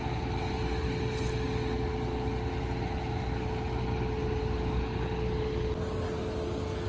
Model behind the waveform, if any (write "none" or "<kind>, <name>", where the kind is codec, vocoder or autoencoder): none